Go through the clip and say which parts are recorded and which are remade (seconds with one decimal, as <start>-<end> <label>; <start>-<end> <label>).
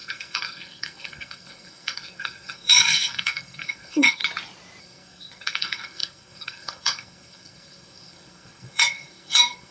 0.0-4.2 remade; 4.2-4.8 recorded; 4.8-9.7 remade